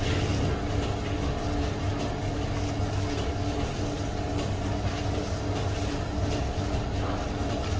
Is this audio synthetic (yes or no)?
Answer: no